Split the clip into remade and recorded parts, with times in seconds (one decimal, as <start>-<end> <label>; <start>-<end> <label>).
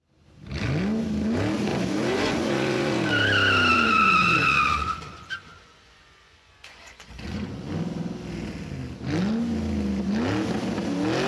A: 0.0-1.7 recorded; 1.7-3.1 remade; 3.1-3.7 recorded; 3.7-7.7 remade; 7.7-11.3 recorded